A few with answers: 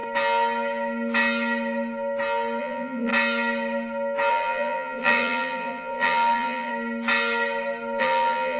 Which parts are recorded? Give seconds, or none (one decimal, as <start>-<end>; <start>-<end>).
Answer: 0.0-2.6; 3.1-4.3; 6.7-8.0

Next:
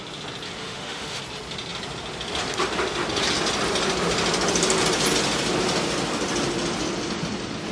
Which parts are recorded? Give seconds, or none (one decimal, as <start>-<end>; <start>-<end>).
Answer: 0.0-0.6; 1.2-7.7

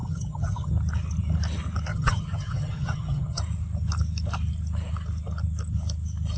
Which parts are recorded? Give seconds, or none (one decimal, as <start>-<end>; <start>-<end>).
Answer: 0.7-1.9; 3.4-6.4

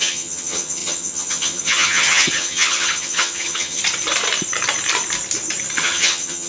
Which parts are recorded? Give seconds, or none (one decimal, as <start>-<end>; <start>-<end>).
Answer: 3.8-5.8

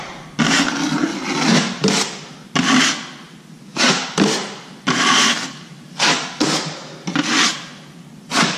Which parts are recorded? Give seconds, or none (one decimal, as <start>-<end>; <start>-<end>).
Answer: 0.0-8.6